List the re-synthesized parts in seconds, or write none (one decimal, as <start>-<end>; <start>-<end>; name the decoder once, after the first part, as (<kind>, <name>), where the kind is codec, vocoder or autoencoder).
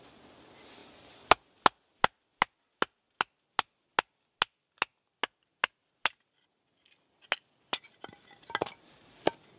none